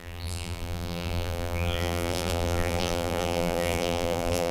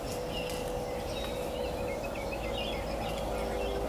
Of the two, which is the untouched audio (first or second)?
second